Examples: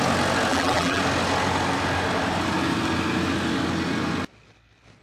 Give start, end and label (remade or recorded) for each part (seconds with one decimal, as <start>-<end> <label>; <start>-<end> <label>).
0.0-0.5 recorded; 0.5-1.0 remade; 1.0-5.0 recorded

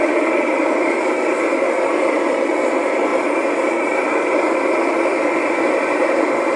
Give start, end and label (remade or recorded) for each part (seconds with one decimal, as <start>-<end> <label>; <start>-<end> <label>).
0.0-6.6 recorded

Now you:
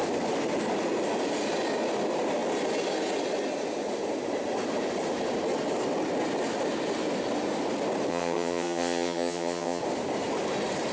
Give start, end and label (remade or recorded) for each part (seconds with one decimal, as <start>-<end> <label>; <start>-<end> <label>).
0.0-8.1 recorded; 8.1-9.8 remade; 9.8-10.9 recorded

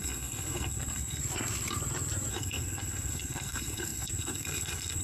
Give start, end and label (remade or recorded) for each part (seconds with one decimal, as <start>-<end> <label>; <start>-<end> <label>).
0.0-1.2 remade; 1.2-2.3 recorded; 2.3-5.0 remade